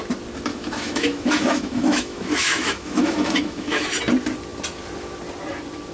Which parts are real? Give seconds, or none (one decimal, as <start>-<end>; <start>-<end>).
0.0-0.5; 4.0-5.9